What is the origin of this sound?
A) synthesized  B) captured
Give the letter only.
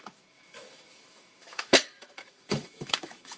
A